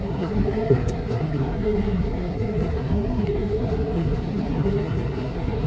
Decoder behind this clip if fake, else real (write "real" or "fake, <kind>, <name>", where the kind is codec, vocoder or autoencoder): fake, codec, SNAC